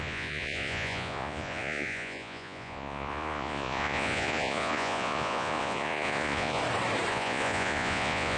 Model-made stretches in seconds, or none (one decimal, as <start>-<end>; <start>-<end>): 0.0-6.6; 7.1-8.4